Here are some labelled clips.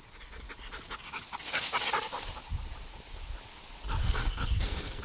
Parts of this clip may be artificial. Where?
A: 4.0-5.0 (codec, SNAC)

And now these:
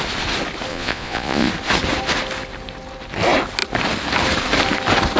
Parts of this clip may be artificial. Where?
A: 0.7-1.5 (vocoder, Vocos)

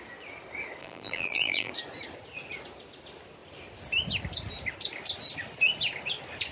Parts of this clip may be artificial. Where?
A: 0.8-1.7 (vocoder, BigVGAN v2)

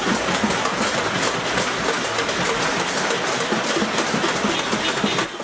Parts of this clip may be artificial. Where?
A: none